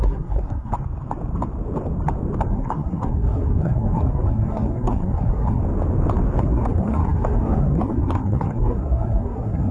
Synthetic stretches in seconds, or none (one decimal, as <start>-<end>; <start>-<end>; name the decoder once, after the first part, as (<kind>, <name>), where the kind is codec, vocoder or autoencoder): 0.0-0.7 (codec, SNAC); 2.5-5.6; 6.4-9.7

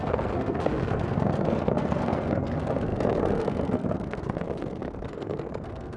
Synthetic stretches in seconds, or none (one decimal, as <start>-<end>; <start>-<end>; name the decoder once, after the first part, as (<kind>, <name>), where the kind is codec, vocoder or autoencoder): 0.0-6.0 (codec, SNAC)

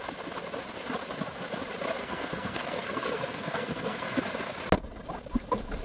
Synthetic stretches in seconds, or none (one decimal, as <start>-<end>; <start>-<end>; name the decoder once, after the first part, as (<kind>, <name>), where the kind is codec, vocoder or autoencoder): 2.0-4.2 (codec, SNAC)